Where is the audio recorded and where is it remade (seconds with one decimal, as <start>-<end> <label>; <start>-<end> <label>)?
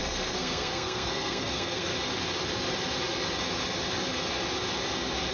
0.0-1.9 remade; 1.9-5.3 recorded